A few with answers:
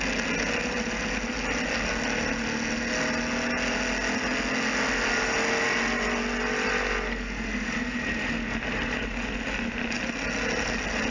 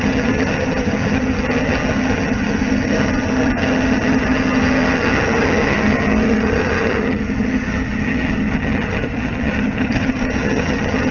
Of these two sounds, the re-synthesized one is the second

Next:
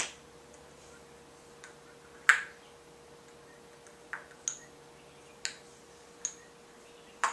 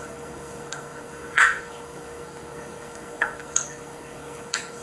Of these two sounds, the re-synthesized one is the second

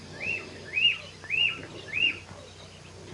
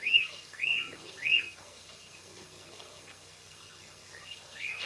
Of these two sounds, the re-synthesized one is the second